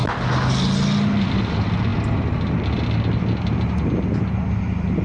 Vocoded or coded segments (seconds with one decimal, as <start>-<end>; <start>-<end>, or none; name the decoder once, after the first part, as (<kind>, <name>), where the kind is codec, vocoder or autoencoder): none